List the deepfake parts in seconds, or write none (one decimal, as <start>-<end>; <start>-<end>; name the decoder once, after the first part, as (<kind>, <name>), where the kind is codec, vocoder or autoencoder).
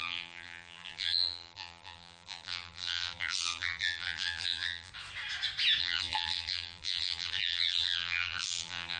0.0-4.9 (vocoder, BigVGAN v2); 5.8-9.0